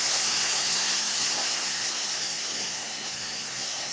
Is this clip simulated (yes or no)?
yes